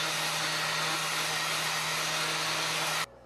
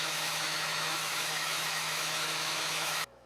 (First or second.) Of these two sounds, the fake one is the second